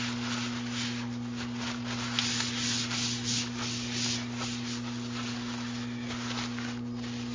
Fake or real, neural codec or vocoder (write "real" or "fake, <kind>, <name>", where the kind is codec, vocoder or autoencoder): real